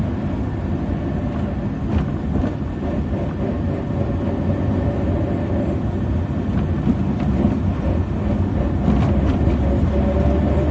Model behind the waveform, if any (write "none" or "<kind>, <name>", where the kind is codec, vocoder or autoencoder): none